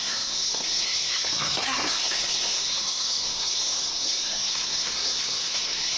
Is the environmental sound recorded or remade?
remade